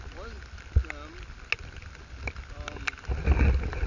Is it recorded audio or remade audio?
recorded